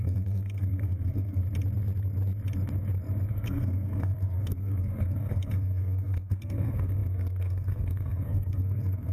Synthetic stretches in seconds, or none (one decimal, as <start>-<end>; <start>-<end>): 0.0-1.4; 3.3-9.1